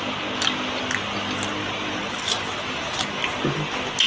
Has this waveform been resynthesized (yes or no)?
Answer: no